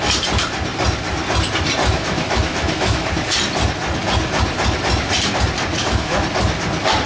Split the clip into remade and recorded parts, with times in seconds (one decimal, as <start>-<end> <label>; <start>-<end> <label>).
0.0-1.8 recorded; 1.8-3.1 remade; 3.1-5.7 recorded; 5.7-6.2 remade; 6.2-7.1 recorded